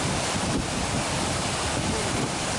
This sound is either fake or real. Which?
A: real